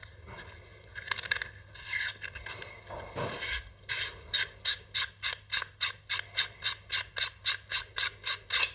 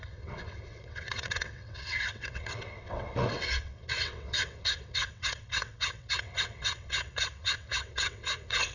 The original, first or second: first